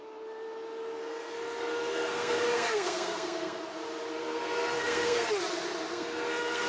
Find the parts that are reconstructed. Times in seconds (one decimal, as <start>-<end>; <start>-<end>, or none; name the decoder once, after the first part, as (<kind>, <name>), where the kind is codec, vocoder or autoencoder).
1.0-3.6 (codec, SNAC); 4.2-5.3; 5.9-6.7